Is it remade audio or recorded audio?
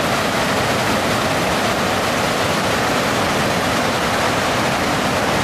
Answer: recorded